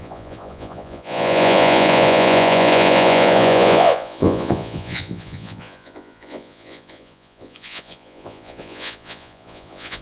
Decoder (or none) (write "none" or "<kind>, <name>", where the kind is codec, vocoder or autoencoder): vocoder, Vocos